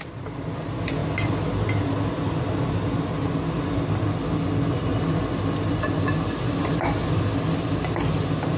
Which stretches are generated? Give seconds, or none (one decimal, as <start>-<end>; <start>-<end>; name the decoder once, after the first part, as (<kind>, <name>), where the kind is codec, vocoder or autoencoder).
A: none